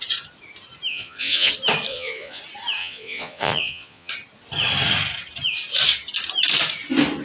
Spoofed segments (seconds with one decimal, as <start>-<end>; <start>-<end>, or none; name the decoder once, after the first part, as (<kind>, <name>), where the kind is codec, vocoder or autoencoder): 0.9-1.5 (vocoder, Vocos); 1.9-2.4; 2.8-4.1

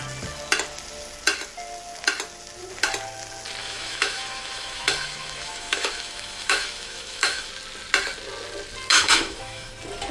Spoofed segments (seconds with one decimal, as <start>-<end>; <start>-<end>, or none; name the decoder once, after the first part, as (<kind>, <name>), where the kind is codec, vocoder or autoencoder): 3.6-7.5 (autoencoder, DAC-VAE); 8.9-9.7

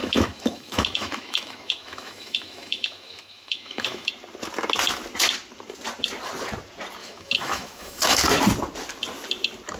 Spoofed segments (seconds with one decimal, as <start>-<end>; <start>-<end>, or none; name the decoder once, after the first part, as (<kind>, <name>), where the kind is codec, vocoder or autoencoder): 0.0-4.1 (autoencoder, DAC-VAE); 7.0-8.2

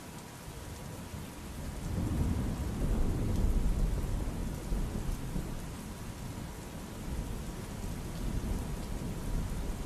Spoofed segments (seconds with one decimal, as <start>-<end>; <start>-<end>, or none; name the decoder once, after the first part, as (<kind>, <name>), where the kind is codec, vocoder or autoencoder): none

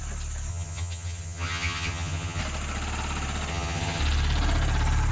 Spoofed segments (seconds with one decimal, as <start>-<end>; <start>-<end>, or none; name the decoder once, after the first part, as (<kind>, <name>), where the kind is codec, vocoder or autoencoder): 0.5-2.4 (vocoder, HiFi-GAN); 3.5-4.0

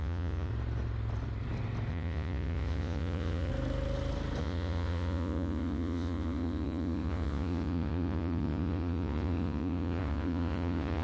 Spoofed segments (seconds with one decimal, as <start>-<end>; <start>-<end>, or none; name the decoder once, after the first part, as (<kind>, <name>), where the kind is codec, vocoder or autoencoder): 0.0-0.5 (vocoder, Vocos); 1.9-3.5; 4.4-11.0

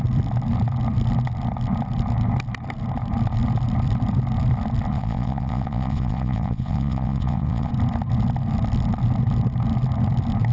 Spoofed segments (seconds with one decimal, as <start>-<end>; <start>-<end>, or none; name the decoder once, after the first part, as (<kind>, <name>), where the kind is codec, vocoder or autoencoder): 4.9-7.7 (vocoder, WaveNeXt)